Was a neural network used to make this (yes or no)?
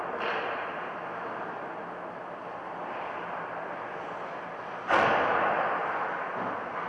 no